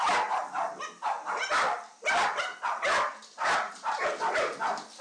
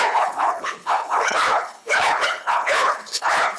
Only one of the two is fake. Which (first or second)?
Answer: second